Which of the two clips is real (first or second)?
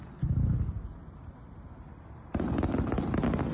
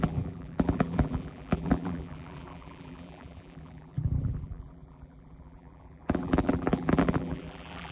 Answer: first